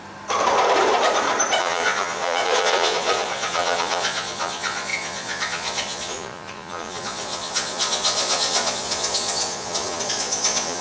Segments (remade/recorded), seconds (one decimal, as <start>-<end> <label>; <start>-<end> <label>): 0.0-1.6 recorded; 1.6-10.8 remade